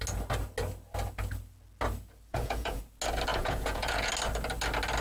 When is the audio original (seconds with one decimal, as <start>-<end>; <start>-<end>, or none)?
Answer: 0.0-2.3; 2.8-3.3; 4.1-5.0